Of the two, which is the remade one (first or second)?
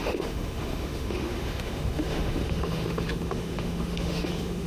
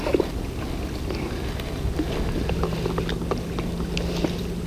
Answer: first